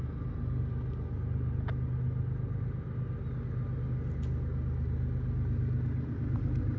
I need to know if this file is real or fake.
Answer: real